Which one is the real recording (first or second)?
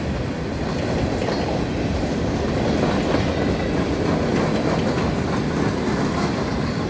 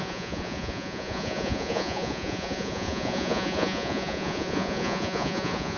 first